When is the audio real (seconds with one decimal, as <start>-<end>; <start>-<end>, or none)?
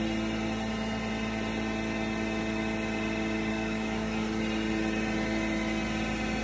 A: 0.0-3.5; 4.4-6.4